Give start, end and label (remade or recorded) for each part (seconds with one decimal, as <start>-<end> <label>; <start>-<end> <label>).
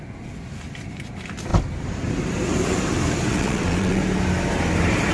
0.0-3.3 recorded; 3.3-4.0 remade; 4.0-5.1 recorded